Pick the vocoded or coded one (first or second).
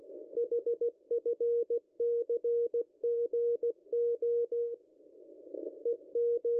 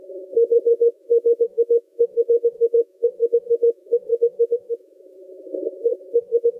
second